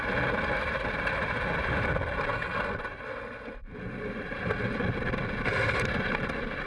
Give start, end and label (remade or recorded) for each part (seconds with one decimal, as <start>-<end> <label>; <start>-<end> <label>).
0.0-6.7 recorded